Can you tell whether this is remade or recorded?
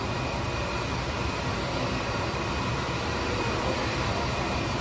recorded